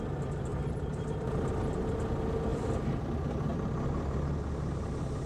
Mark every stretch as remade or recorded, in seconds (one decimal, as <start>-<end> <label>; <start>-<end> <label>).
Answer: 0.0-0.5 recorded; 0.5-1.5 remade; 1.5-2.5 recorded; 2.5-3.0 remade; 3.0-3.5 recorded; 3.5-5.3 remade